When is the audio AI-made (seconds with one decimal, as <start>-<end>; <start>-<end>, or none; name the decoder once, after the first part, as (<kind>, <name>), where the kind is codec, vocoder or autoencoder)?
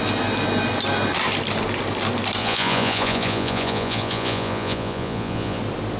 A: 2.4-5.6 (vocoder, Vocos)